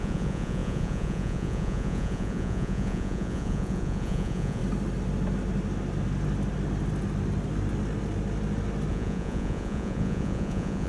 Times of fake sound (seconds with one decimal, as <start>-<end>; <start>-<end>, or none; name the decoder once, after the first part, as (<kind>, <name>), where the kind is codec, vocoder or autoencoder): 0.0-4.6 (vocoder, Vocos); 8.9-10.9